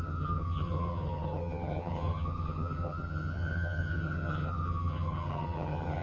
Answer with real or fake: fake